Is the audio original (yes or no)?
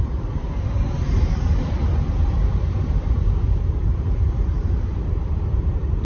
no